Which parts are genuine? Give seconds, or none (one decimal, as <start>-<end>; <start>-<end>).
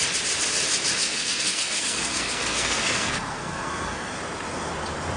0.0-1.0; 4.1-5.2